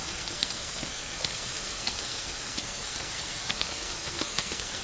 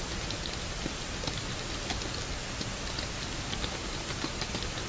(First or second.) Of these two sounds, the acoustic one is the second